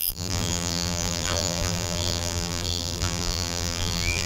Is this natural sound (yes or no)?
no